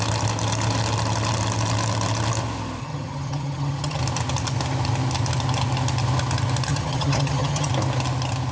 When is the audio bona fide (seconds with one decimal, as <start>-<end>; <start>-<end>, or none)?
0.0-2.8; 4.0-6.7; 7.7-8.5